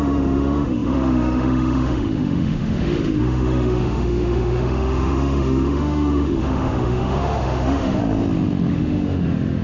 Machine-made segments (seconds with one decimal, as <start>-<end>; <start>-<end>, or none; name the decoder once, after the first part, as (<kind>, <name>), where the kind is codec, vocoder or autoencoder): 0.0-8.0 (autoencoder, DAC-VAE); 8.7-9.6